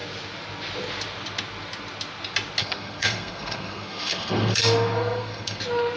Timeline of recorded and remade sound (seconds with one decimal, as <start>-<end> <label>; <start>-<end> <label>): 0.0-2.6 recorded; 2.6-5.6 remade; 5.6-6.0 recorded